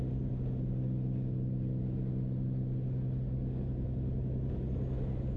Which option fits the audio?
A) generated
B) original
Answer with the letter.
B